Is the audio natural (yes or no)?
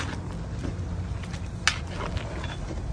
yes